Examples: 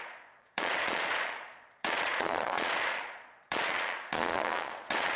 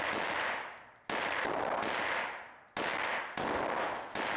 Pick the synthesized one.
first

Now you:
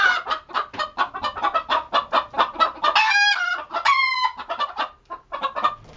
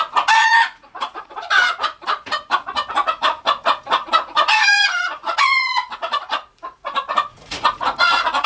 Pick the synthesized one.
second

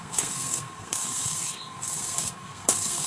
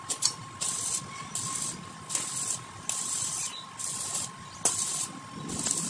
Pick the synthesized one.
first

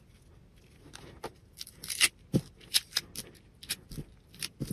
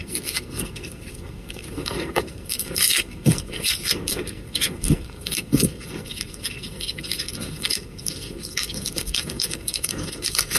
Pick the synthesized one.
second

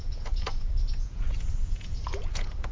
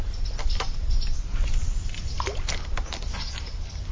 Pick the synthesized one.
first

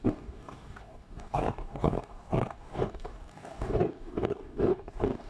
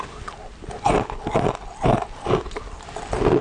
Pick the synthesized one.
first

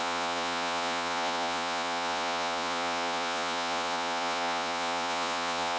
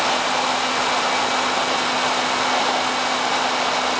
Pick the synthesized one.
first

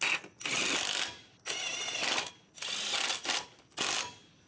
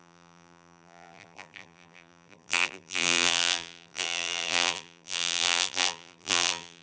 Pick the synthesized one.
second